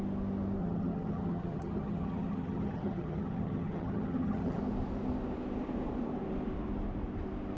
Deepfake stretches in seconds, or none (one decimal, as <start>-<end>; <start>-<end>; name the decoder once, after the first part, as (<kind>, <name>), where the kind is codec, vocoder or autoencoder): 0.6-4.6 (vocoder, HiFi-GAN)